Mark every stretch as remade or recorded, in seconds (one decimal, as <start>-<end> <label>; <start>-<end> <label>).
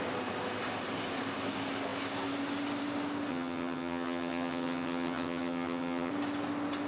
0.0-3.3 recorded; 3.3-6.1 remade; 6.1-6.9 recorded